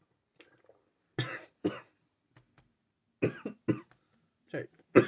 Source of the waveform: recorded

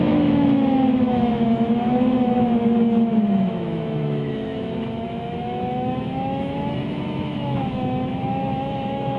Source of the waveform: remade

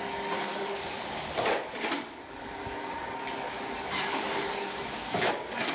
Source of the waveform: remade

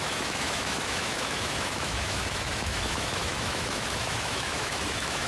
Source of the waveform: remade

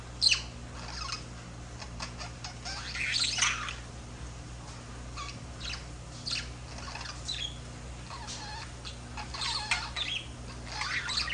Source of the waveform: recorded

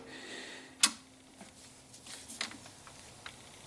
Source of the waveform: recorded